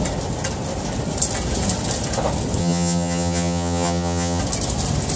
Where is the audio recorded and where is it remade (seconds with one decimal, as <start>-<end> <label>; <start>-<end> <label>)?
0.0-2.6 recorded; 2.6-4.4 remade; 4.4-5.2 recorded